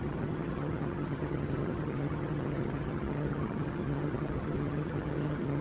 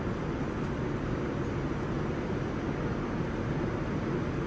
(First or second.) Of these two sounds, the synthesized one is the first